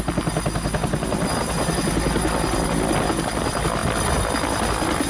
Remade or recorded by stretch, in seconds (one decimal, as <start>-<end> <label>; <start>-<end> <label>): 0.0-5.1 recorded